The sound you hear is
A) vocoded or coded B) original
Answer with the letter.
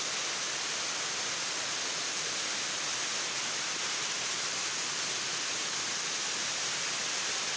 B